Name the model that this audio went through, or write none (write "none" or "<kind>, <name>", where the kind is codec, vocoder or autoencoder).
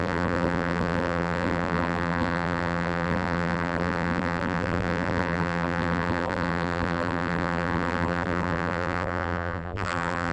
vocoder, BigVGAN v2